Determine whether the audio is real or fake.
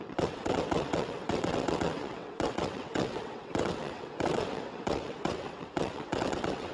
fake